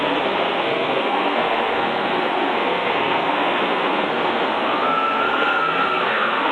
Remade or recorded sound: remade